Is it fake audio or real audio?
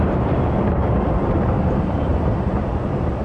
fake